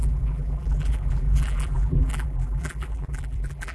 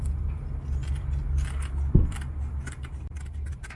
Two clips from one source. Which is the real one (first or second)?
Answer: second